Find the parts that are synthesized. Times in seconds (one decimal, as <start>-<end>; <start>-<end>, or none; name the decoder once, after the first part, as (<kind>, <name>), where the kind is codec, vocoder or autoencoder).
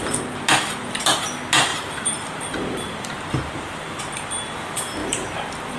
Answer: 1.7-4.0 (vocoder, BigVGAN v2); 5.0-5.8